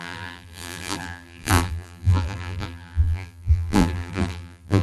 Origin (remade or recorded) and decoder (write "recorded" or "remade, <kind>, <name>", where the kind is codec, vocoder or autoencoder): remade, vocoder, BigVGAN v2